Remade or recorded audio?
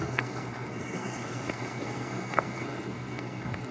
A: remade